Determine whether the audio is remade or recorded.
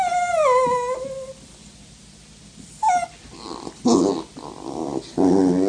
recorded